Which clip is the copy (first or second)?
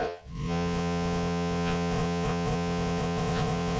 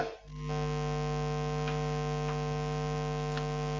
first